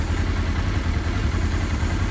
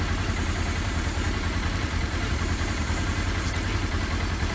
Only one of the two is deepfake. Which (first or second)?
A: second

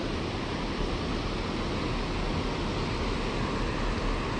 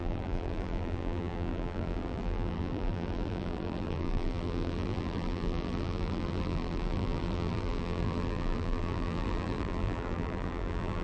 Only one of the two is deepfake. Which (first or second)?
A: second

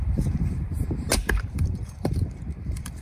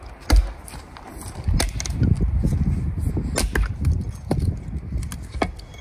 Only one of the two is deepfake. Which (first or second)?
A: first